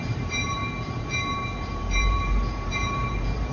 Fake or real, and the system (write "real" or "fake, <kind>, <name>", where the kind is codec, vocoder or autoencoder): fake, vocoder, BigVGAN v2